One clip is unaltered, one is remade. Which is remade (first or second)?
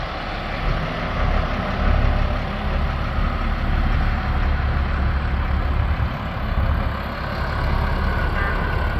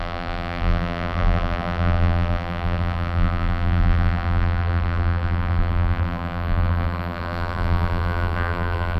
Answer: second